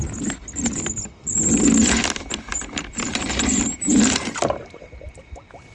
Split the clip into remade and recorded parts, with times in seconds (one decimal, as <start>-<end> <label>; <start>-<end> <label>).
0.0-2.5 recorded; 2.5-4.9 remade; 4.9-5.7 recorded